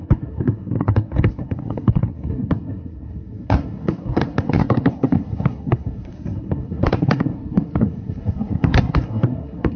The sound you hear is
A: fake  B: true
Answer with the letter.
A